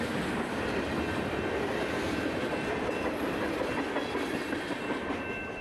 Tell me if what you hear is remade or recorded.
remade